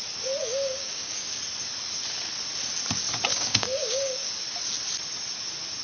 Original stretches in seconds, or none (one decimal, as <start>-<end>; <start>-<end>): 0.0-0.4; 1.4-3.3; 4.3-5.8